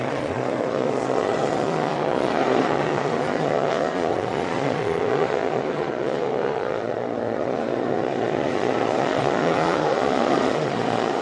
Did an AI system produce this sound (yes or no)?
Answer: yes